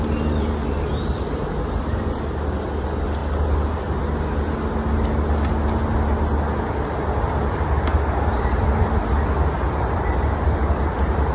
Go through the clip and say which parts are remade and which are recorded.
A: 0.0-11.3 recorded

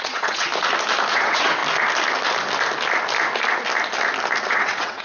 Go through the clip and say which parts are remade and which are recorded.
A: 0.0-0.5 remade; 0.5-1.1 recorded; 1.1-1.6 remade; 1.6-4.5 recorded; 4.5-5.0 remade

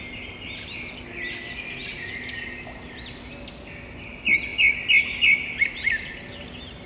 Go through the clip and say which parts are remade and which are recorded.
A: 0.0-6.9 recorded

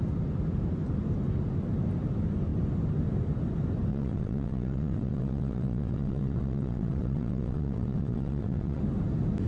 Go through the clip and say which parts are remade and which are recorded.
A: 0.0-3.9 recorded; 3.9-8.8 remade; 8.8-9.5 recorded

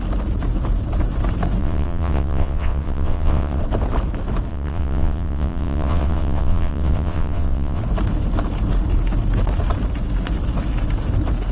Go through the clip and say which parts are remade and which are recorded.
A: 0.0-1.6 recorded; 1.6-3.6 remade; 3.6-4.5 recorded; 4.5-7.8 remade; 7.8-11.5 recorded